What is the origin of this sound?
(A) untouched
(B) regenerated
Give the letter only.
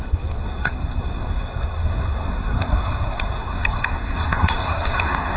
B